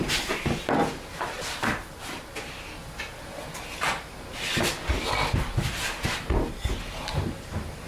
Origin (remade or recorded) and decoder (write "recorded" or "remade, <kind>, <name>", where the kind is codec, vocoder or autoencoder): recorded